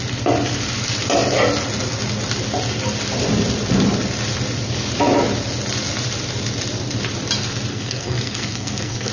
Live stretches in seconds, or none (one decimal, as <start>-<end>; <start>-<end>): 0.0-7.7

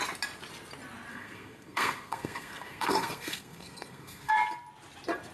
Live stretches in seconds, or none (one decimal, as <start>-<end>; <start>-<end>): 0.0-1.1; 4.3-5.3

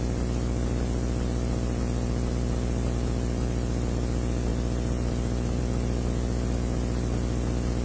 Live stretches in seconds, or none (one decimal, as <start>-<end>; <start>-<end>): 0.0-7.8

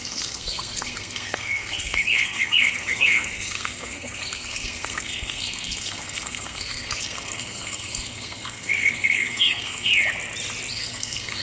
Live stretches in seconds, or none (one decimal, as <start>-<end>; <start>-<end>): 9.9-10.7

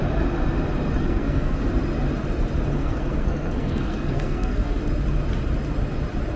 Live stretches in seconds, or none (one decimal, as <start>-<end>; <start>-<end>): 0.0-1.0; 1.6-2.8; 4.8-6.4

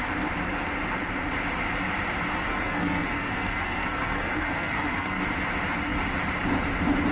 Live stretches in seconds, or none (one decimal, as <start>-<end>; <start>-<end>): 0.0-2.4; 5.2-7.1

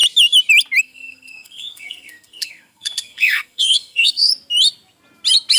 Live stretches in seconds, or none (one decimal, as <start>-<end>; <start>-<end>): 0.0-0.8; 4.3-5.6